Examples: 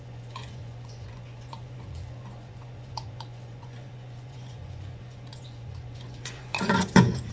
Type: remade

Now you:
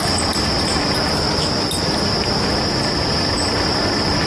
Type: recorded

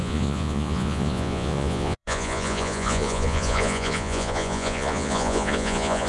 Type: remade